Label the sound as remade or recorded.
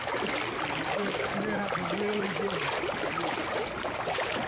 remade